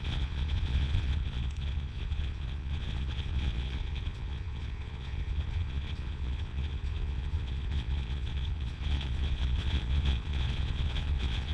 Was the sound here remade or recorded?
remade